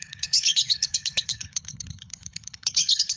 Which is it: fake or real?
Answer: fake